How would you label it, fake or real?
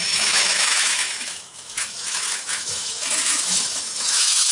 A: fake